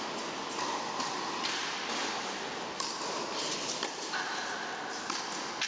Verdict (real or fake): real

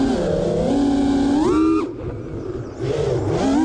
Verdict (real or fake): real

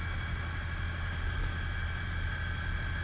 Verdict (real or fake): real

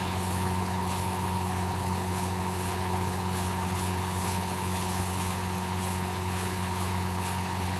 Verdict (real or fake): fake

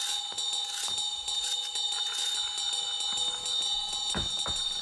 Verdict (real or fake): real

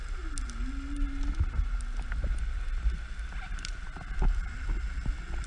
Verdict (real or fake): real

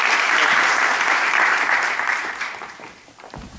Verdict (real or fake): fake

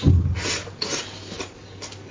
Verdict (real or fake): real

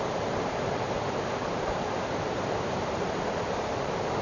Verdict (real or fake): fake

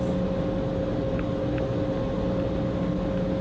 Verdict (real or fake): real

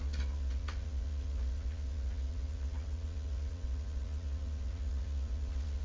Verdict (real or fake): fake